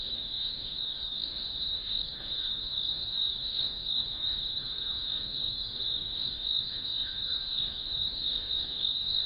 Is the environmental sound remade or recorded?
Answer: remade